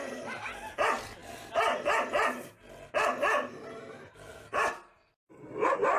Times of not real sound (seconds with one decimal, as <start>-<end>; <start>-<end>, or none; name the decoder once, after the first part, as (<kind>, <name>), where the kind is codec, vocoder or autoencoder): none